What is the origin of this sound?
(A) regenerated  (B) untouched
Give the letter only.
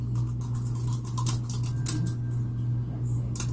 B